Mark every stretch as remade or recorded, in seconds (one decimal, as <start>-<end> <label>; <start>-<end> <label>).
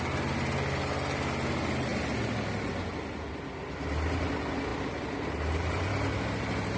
0.0-6.8 recorded